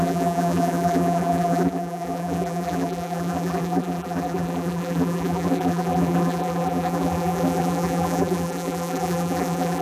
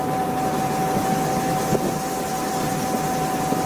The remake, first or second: first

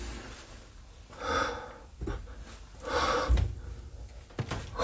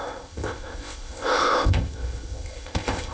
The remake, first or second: second